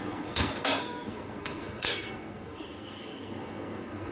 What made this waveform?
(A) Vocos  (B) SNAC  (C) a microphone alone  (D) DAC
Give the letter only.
B